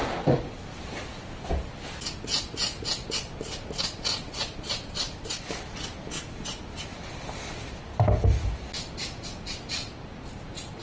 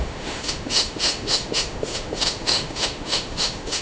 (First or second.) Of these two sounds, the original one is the first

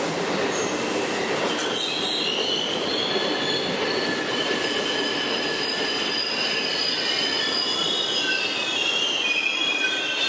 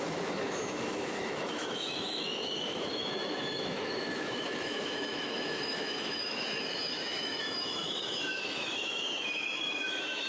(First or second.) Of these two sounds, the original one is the first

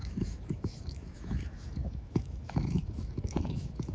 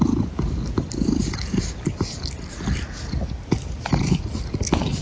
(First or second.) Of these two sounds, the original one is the second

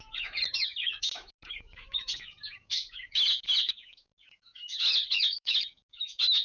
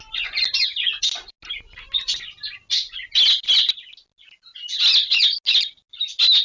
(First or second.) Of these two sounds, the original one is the second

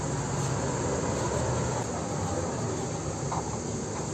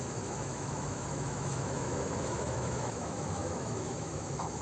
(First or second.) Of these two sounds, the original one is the first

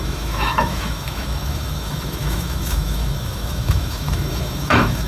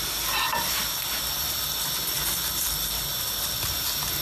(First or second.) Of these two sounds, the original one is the second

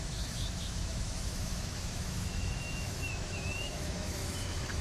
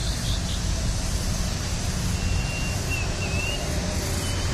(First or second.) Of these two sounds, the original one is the second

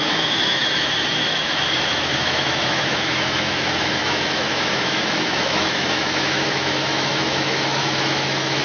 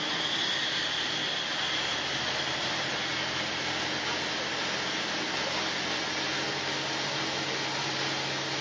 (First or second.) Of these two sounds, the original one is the second